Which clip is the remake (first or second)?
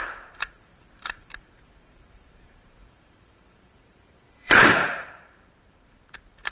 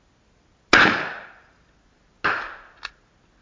first